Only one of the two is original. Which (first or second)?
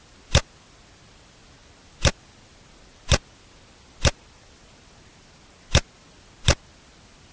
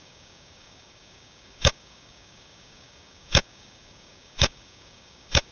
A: first